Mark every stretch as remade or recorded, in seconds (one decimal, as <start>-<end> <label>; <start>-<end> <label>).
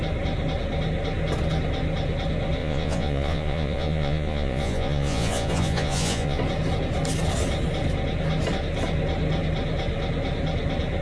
0.0-2.6 recorded; 2.6-6.4 remade; 6.4-11.0 recorded